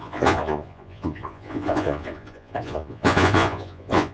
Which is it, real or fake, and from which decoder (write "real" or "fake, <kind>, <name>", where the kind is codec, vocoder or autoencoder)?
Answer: fake, vocoder, Vocos